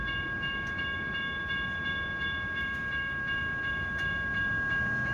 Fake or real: fake